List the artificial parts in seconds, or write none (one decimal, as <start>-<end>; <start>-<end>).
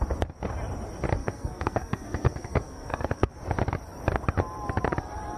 1.2-3.3